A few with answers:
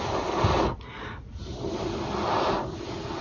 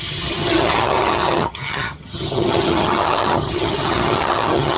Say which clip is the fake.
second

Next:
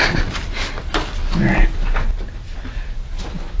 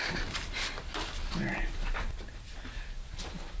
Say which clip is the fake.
second